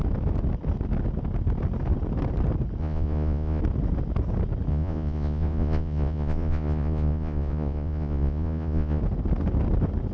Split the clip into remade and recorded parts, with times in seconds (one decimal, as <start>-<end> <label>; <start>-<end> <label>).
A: 0.0-2.8 recorded; 2.8-3.6 remade; 3.6-4.7 recorded; 4.7-9.0 remade; 9.0-10.1 recorded